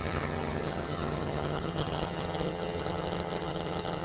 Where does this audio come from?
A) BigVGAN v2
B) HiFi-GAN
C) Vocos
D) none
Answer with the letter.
B